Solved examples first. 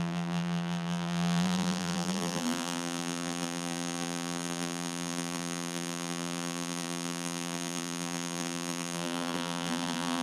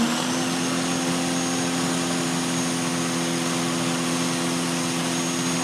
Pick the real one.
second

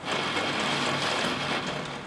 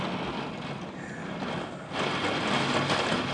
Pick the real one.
first